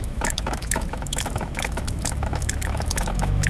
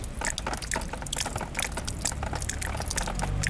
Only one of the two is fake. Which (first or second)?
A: first